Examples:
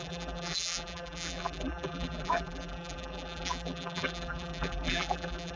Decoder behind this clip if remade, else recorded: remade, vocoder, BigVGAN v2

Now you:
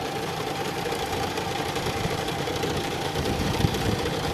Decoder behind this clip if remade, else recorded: remade, vocoder, BigVGAN v2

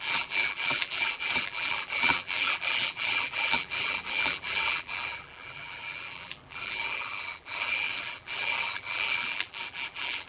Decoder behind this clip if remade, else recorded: remade, vocoder, BigVGAN v2